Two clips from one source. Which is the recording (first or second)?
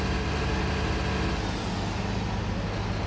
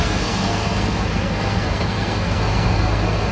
first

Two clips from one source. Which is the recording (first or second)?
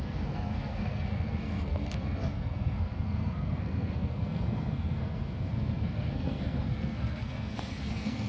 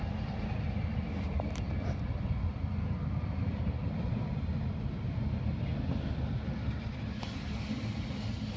second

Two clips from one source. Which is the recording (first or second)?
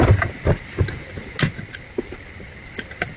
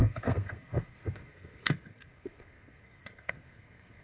first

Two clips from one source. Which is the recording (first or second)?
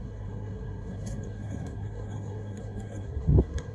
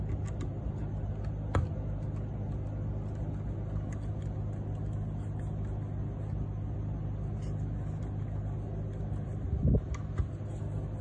second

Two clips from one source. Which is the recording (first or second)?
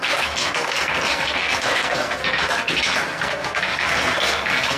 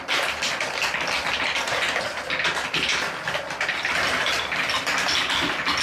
second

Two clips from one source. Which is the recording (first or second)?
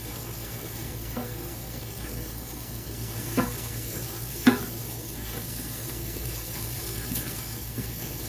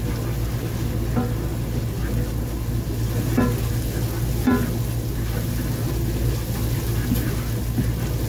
second